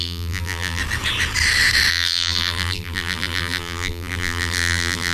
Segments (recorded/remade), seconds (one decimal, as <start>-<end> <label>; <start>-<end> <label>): 0.0-0.8 remade; 0.8-1.9 recorded; 1.9-5.1 remade